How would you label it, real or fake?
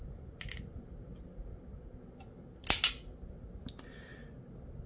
real